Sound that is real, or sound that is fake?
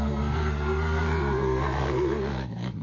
fake